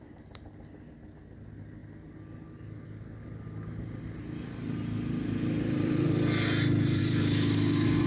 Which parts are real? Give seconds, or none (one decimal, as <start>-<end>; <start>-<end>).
0.0-7.0